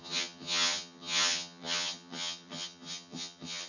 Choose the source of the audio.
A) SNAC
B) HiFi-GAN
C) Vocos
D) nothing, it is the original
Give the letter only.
B